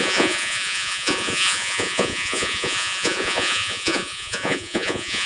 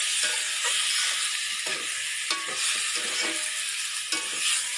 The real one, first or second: second